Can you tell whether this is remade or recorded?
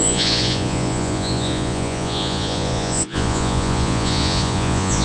remade